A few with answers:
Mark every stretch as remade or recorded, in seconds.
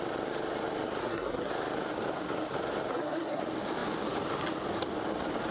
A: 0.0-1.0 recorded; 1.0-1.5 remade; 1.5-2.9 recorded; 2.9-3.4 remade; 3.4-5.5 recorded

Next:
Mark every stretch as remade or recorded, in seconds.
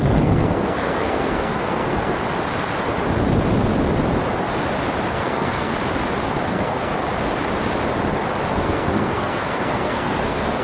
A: 0.0-2.2 remade; 2.2-5.1 recorded; 5.1-5.7 remade; 5.7-6.5 recorded; 6.5-6.9 remade; 6.9-8.5 recorded; 8.5-10.6 remade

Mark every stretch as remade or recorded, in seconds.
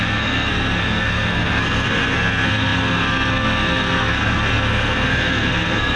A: 0.0-6.0 remade